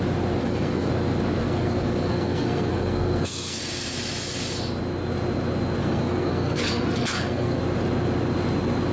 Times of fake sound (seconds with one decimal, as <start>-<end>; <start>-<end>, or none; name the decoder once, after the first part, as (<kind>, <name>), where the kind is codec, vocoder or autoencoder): 0.4-0.9 (codec, SNAC); 1.4-3.6; 5.8-7.6